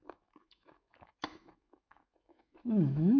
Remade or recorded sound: remade